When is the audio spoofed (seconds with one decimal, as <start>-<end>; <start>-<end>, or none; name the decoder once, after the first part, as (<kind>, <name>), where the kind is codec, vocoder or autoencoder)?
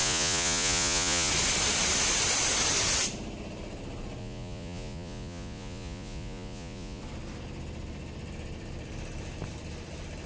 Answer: 0.0-1.3 (vocoder, Vocos); 4.2-7.0